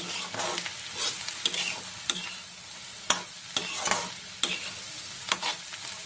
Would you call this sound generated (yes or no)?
no